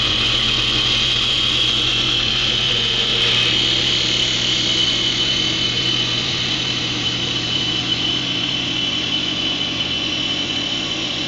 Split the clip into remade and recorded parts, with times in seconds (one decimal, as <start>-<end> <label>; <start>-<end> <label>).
0.0-3.1 remade; 3.1-4.9 recorded; 4.9-11.3 remade